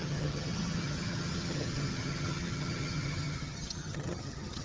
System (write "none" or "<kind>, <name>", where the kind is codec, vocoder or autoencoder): vocoder, HiFi-GAN